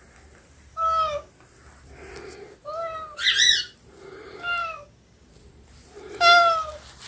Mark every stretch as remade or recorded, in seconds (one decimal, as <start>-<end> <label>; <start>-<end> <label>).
0.0-0.7 recorded; 0.7-1.3 remade; 1.3-4.6 recorded; 4.6-5.3 remade; 5.3-7.1 recorded